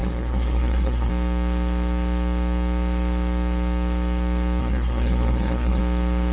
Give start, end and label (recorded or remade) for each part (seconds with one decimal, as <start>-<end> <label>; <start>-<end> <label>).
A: 0.0-1.1 remade; 1.1-4.6 recorded; 4.6-5.8 remade; 5.8-6.3 recorded